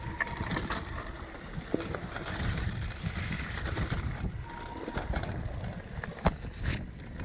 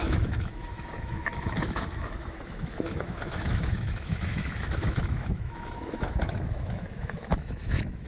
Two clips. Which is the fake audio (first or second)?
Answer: second